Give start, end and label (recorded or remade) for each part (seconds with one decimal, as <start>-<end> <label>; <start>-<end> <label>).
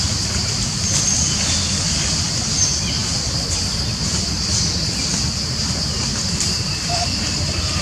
0.0-7.8 recorded